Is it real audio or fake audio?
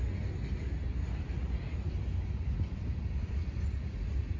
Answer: real